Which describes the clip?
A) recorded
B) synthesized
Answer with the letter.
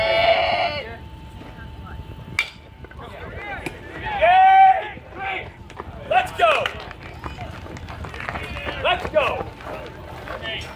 A